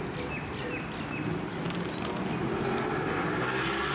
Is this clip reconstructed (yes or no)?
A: no